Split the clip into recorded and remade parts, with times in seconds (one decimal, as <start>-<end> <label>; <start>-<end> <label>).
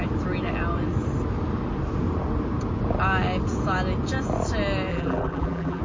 0.0-4.9 recorded; 4.9-5.8 remade